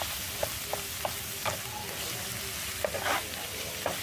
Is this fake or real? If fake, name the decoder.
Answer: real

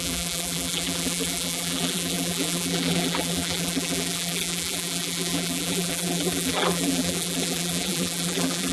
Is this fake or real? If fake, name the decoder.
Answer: fake, vocoder, BigVGAN v2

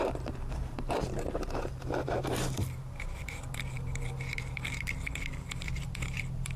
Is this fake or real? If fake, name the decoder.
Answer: fake, vocoder, BigVGAN v2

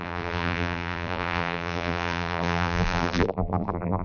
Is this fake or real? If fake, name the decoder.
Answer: fake, vocoder, BigVGAN v2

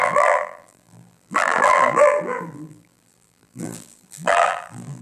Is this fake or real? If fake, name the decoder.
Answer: fake, vocoder, BigVGAN v2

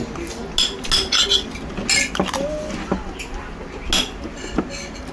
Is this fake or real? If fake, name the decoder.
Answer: real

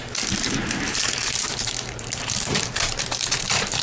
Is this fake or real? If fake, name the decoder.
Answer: fake, vocoder, BigVGAN v2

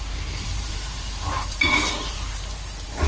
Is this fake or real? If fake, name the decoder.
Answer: fake, vocoder, BigVGAN v2